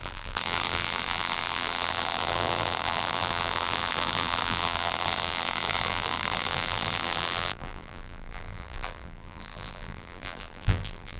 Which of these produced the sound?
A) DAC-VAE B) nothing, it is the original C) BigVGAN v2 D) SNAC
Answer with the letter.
C